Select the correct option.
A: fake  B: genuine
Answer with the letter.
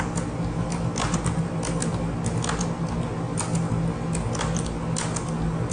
B